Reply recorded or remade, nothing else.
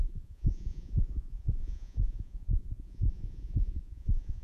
remade